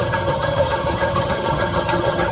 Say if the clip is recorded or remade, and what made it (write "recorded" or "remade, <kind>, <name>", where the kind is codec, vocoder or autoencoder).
remade, vocoder, HiFi-GAN